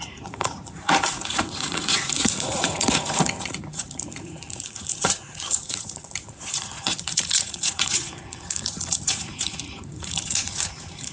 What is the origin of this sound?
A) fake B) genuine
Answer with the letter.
A